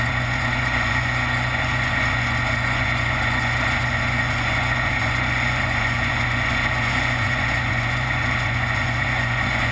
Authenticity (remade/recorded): remade